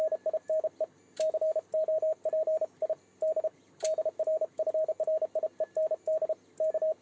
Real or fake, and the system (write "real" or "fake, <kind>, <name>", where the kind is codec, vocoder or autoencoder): real